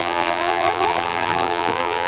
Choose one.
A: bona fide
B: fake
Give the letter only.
B